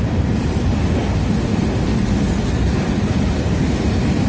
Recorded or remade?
recorded